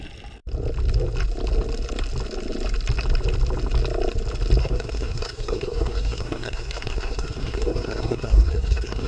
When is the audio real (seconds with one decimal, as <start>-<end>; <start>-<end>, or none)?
0.0-4.6